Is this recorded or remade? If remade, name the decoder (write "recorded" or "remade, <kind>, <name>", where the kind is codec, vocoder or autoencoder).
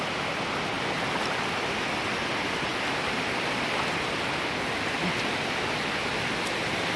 recorded